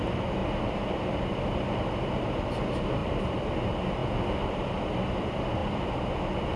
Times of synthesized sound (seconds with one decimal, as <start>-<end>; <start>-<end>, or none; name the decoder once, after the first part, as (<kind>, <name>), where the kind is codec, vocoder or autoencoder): 0.4-1.1 (vocoder, BigVGAN v2); 3.0-3.6; 5.6-6.6